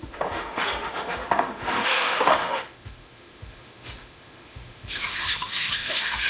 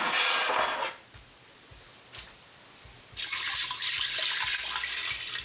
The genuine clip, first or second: second